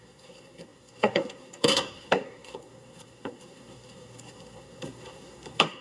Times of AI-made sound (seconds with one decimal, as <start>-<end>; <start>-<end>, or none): 0.0-5.8